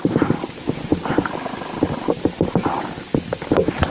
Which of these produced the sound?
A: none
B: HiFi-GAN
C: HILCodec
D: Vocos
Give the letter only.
A